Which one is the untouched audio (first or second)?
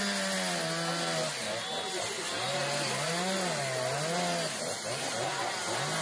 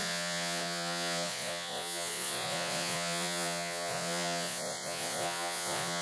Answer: first